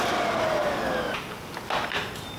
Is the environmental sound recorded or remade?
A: recorded